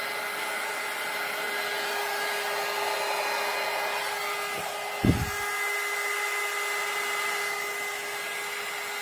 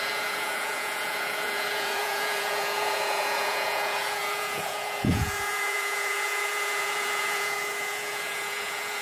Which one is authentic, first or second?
first